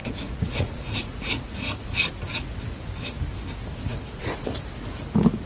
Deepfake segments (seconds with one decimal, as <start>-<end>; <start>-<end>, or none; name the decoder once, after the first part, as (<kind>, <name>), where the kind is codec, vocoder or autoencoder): 0.0-2.1 (vocoder, Vocos); 3.9-4.6